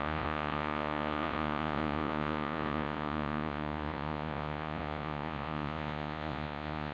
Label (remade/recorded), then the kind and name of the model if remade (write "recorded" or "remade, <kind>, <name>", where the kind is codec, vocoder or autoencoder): remade, vocoder, Vocos